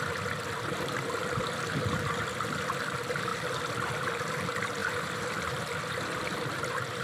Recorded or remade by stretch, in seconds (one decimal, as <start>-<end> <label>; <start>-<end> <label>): 0.0-7.0 recorded